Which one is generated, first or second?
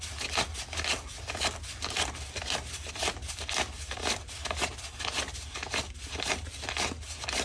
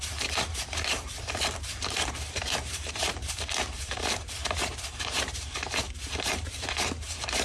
second